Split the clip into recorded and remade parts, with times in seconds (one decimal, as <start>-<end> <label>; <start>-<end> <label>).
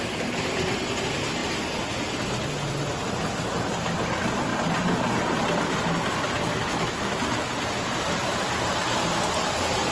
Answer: 0.0-6.6 recorded; 6.6-7.2 remade; 7.2-9.9 recorded